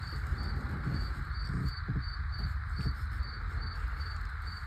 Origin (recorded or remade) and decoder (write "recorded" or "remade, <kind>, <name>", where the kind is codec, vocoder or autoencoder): recorded